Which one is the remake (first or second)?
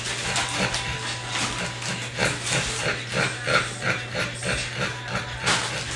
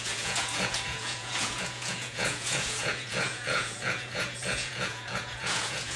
second